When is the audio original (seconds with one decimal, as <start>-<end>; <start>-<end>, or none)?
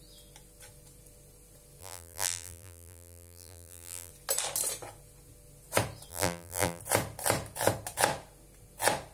0.0-1.8; 4.1-6.1; 6.8-9.1